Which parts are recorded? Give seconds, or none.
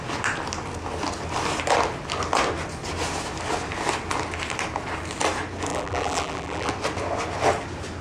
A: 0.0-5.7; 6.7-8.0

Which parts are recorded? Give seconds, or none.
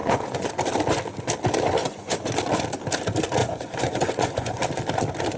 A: 0.5-1.8; 2.3-3.4; 4.6-5.4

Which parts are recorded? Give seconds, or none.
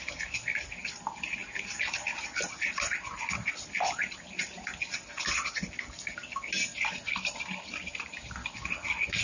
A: 0.0-9.2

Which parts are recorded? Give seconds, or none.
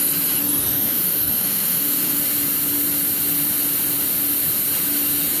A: 0.0-0.6; 2.2-5.4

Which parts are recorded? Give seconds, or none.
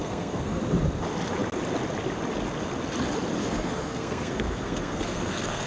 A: 0.6-3.4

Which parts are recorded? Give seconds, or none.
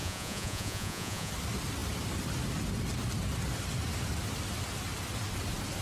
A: 1.3-5.8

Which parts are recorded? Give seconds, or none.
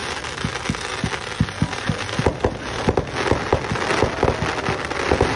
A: 0.0-5.4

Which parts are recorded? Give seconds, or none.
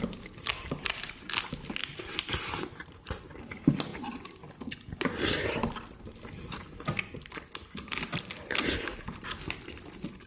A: 0.0-1.8; 2.9-10.3